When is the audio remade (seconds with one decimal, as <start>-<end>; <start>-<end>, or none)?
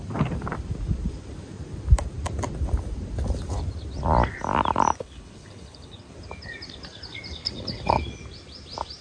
5.0-6.1; 7.4-8.0